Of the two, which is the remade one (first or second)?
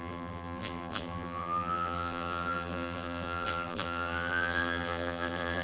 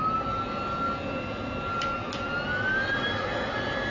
first